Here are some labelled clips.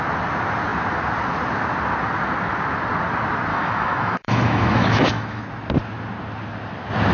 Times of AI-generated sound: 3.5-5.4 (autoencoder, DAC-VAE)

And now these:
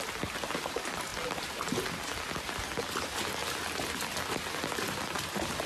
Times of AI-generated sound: none

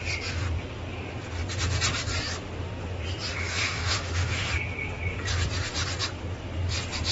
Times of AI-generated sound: 3.4-4.5 (autoencoder, DAC-VAE)

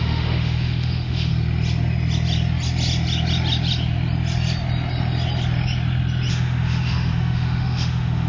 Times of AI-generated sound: 0.0-1.3 (autoencoder, DAC-VAE); 6.3-8.3

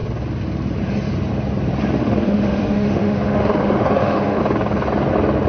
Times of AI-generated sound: 2.0-4.4 (autoencoder, DAC-VAE)